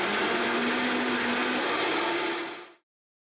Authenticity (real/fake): real